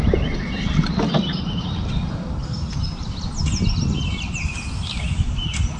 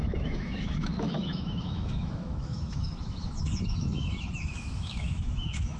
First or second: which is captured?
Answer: first